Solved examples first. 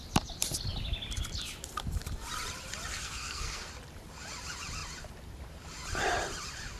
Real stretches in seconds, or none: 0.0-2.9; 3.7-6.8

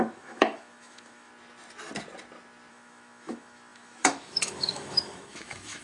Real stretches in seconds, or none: 1.3-2.7

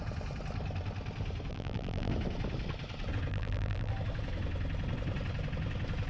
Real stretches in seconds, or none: 0.0-1.5; 2.1-3.3; 3.9-6.1

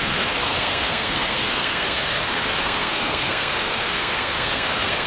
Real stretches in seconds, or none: none

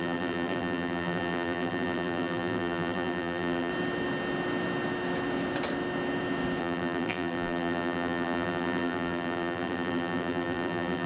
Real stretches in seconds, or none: 3.7-6.6